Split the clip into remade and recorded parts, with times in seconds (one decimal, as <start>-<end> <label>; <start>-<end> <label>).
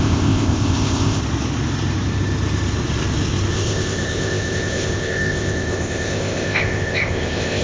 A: 0.0-1.2 remade; 1.2-3.5 recorded; 3.5-7.6 remade